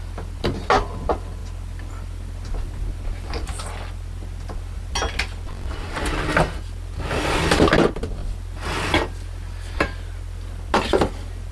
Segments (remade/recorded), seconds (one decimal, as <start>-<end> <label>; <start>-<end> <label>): 0.0-11.5 recorded